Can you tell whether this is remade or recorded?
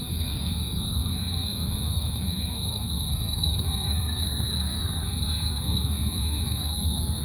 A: remade